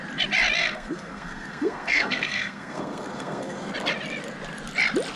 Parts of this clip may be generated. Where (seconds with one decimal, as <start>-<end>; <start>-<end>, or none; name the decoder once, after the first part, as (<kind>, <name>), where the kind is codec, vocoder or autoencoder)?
0.6-3.7 (codec, SNAC)